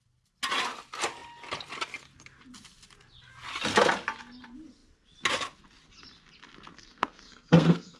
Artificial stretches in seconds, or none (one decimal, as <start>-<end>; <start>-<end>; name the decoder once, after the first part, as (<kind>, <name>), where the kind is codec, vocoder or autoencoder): 6.7-8.0 (codec, SNAC)